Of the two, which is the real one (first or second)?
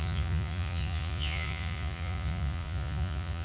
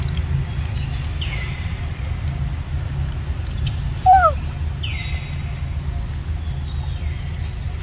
second